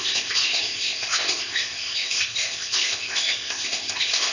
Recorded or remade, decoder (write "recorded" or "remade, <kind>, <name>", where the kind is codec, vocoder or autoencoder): remade, codec, ZipCodec